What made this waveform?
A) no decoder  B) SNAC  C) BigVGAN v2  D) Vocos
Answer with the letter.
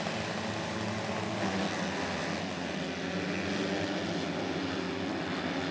A